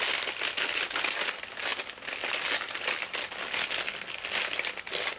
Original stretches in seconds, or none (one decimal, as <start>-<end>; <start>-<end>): 0.0-5.2